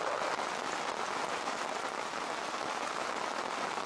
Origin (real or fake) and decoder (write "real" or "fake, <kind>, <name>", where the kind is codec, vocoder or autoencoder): real